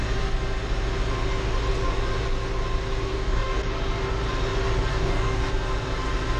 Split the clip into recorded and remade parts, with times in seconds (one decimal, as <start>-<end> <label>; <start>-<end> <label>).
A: 0.0-3.1 recorded; 3.1-3.7 remade; 3.7-4.9 recorded; 4.9-5.5 remade; 5.5-6.4 recorded